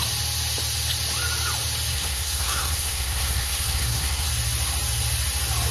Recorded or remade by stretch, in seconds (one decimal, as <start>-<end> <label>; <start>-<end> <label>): 0.0-1.9 recorded; 1.9-4.3 remade; 4.3-5.7 recorded